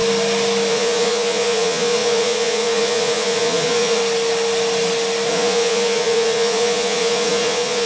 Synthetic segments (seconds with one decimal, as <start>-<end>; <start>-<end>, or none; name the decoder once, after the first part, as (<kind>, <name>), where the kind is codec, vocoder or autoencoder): 0.7-4.0 (vocoder, Vocos); 5.3-7.9